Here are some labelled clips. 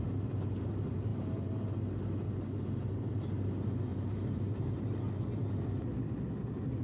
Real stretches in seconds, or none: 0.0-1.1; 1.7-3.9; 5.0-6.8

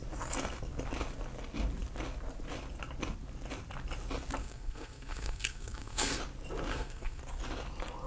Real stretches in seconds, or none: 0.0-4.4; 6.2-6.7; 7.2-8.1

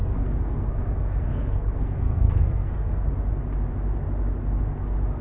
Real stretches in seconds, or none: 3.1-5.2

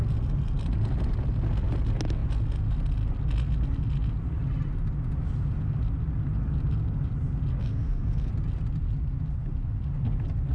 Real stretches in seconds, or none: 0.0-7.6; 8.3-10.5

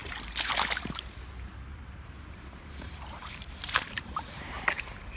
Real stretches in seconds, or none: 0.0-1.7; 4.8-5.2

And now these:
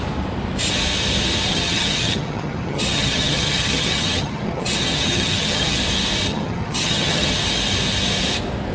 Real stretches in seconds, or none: 0.0-1.5; 5.8-6.3; 7.3-8.7

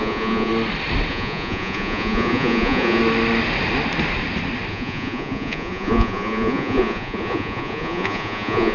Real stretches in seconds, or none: 0.5-1.1; 3.0-4.7

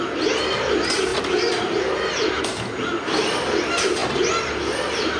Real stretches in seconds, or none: 0.0-1.1; 2.4-5.2